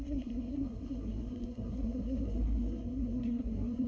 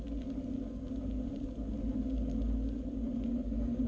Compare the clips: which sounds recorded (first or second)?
second